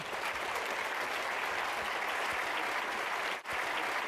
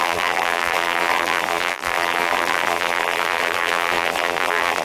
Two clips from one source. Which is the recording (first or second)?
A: first